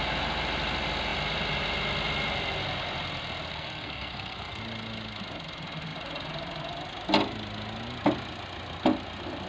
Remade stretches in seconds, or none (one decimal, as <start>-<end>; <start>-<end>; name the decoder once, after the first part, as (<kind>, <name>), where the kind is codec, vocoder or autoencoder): 3.5-4.6 (codec, SNAC)

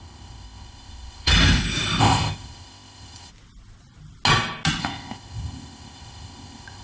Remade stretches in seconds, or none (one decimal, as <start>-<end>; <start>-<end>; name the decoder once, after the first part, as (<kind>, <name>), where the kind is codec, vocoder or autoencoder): 0.0-1.3 (codec, ZipCodec); 2.0-3.3; 4.8-6.8

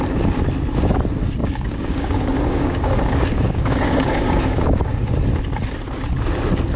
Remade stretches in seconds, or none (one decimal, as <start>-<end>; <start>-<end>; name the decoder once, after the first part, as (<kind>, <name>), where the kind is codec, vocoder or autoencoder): 1.4-5.1 (codec, DAC)

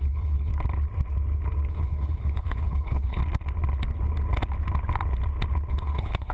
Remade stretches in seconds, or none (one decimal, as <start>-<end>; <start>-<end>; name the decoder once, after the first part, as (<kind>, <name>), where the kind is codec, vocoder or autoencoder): 0.0-0.5 (codec, HILCodec); 1.7-3.2; 5.7-6.3

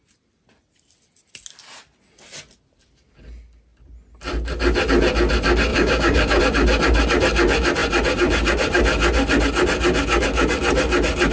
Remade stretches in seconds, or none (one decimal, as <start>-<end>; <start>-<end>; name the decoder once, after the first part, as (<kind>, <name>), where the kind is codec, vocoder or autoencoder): 5.7-6.4 (codec, DAC)

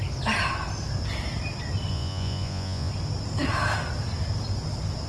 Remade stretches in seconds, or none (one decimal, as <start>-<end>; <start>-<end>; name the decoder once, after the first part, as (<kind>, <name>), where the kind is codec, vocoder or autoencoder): 1.9-2.9 (vocoder, Vocos)